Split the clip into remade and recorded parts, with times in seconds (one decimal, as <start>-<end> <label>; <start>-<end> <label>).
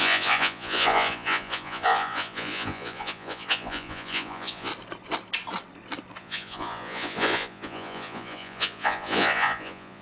0.0-4.7 remade; 4.7-6.2 recorded; 6.2-10.0 remade